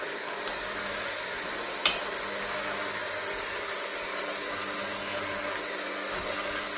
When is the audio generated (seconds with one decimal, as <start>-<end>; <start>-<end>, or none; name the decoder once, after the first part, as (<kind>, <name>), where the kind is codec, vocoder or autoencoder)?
0.8-1.5 (autoencoder, DAC-VAE)